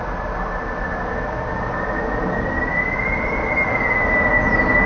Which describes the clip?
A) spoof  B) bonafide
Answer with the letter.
B